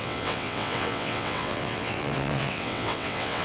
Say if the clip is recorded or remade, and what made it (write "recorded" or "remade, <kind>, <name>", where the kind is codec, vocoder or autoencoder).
remade, vocoder, WaveNeXt